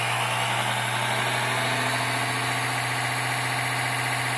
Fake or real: real